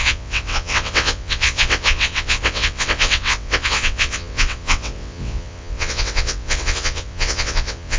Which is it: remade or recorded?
remade